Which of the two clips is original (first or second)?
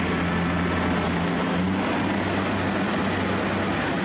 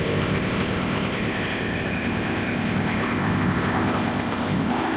first